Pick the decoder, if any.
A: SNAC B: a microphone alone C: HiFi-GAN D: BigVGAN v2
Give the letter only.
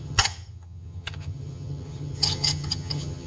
C